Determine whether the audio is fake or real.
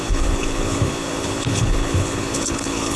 fake